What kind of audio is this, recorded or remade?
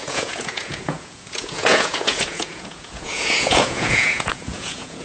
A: remade